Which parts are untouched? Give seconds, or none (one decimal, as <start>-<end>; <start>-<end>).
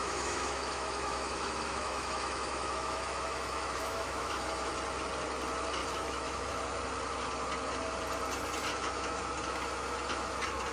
4.7-5.8; 6.5-8.7; 9.2-10.7